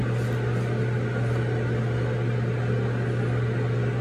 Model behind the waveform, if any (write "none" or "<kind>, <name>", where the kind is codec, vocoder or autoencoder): none